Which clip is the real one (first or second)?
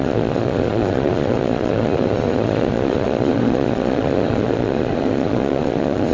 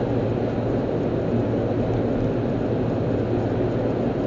second